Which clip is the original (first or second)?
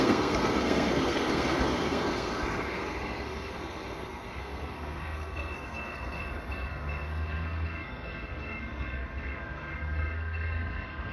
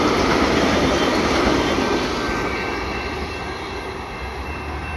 second